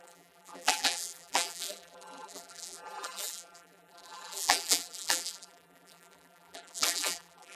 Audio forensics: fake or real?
fake